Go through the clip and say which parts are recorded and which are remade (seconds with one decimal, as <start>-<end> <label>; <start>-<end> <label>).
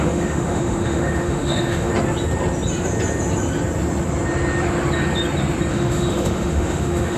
0.0-1.9 remade; 1.9-5.7 recorded; 5.7-7.2 remade